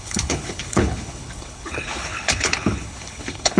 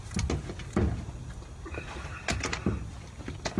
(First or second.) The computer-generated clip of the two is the first